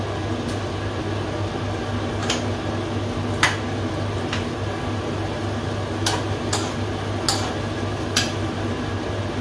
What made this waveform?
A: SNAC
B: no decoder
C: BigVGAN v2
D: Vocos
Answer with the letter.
B